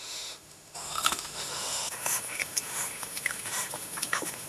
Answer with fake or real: fake